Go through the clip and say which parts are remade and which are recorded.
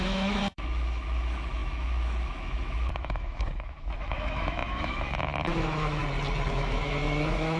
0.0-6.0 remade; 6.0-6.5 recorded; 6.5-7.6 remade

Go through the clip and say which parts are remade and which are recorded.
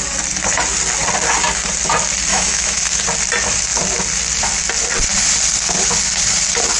0.0-2.3 recorded; 2.3-3.0 remade; 3.0-6.8 recorded